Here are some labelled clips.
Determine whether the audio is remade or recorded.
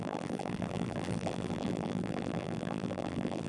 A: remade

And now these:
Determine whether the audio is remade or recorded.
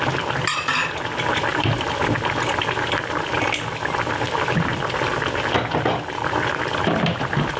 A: recorded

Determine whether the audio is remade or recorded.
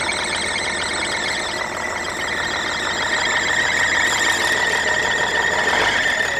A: recorded